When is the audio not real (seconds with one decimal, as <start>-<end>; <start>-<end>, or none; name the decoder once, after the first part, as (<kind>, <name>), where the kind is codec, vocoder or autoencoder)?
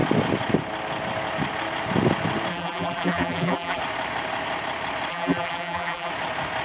2.5-3.8 (vocoder, BigVGAN v2); 5.1-6.1